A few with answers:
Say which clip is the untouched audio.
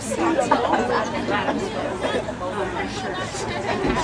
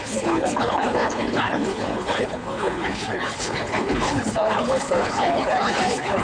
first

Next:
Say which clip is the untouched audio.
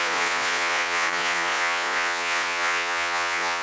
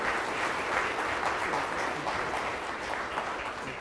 second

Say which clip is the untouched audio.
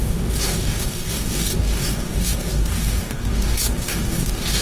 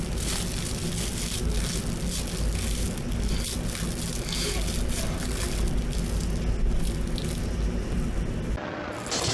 second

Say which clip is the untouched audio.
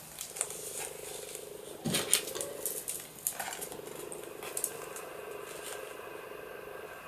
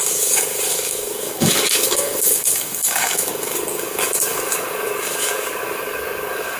first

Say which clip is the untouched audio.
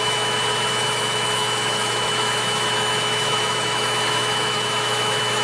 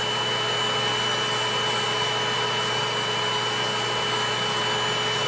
second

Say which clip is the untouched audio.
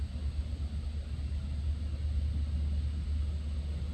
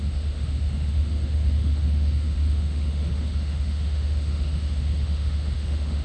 first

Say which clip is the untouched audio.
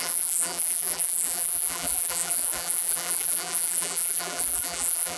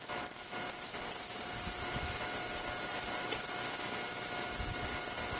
second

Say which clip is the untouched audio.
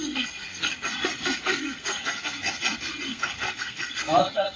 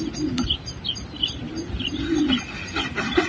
second